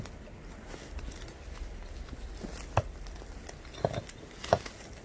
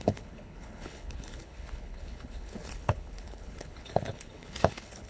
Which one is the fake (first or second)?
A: second